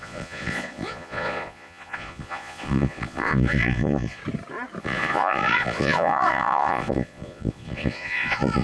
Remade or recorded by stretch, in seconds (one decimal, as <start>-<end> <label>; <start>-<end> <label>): 0.0-4.2 remade; 4.2-4.8 recorded; 4.8-8.6 remade